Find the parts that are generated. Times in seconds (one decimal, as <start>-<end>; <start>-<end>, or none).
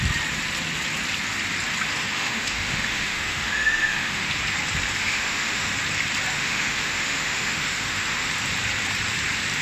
2.0-4.3; 5.0-5.7; 6.3-8.3